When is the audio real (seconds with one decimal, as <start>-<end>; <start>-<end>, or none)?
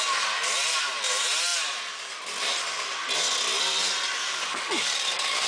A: 0.0-4.2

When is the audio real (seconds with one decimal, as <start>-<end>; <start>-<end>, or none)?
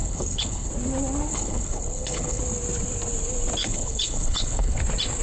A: 0.7-1.3; 2.4-3.6; 4.8-5.2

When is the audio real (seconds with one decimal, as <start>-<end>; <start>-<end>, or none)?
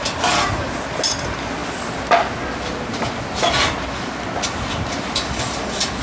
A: 0.0-6.0